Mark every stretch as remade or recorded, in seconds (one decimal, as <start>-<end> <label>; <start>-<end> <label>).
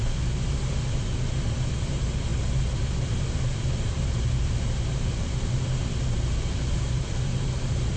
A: 0.0-8.0 recorded